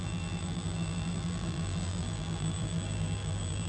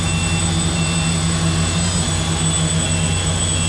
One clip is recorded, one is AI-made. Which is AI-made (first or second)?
first